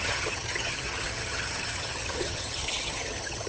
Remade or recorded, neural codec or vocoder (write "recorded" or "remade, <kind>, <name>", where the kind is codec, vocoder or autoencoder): remade, vocoder, HiFi-GAN